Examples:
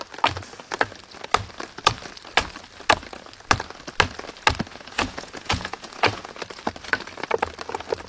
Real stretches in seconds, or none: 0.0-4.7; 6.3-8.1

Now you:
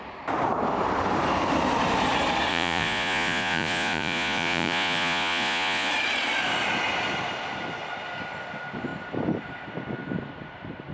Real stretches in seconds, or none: 0.0-2.5; 5.9-10.9

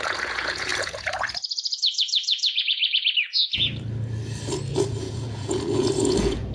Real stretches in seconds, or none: 2.8-4.5

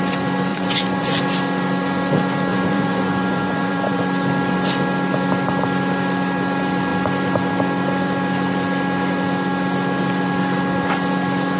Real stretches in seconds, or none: 0.0-0.5; 1.2-2.5; 4.0-11.6

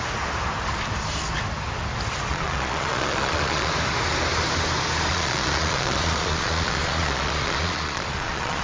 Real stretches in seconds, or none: 0.0-2.3; 3.7-5.1

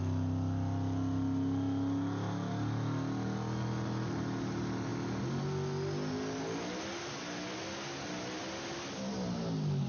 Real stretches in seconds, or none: 0.0-9.9

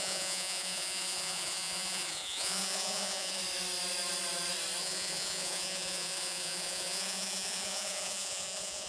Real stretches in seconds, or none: 3.4-4.8

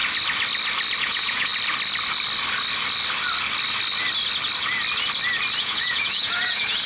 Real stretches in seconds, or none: 0.0-1.0; 1.5-5.6